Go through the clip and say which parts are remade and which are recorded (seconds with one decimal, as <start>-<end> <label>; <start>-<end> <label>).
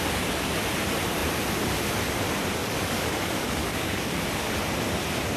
0.0-2.6 recorded; 2.6-4.2 remade; 4.2-5.4 recorded